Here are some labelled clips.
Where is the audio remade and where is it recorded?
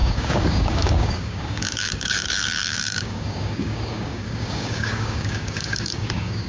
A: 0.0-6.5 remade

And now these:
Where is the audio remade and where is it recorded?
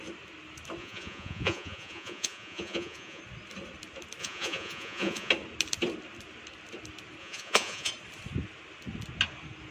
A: 0.0-0.8 recorded; 0.8-3.2 remade; 3.2-4.2 recorded; 4.2-5.3 remade; 5.3-7.2 recorded; 7.2-7.9 remade; 7.9-9.7 recorded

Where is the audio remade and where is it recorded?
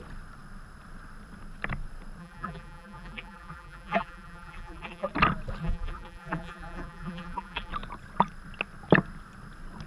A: 0.0-2.2 recorded; 2.2-5.1 remade; 5.1-5.6 recorded; 5.6-7.7 remade; 7.7-9.9 recorded